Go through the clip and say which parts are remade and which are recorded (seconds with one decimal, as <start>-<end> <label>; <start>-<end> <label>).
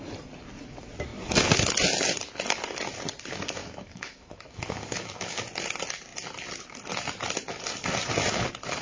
0.0-3.6 recorded; 3.6-5.4 remade; 5.4-8.8 recorded